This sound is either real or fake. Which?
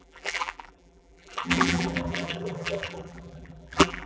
fake